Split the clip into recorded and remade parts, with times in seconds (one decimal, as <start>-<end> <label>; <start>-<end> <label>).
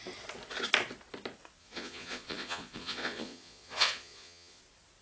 0.0-1.6 recorded; 1.6-4.6 remade; 4.6-5.0 recorded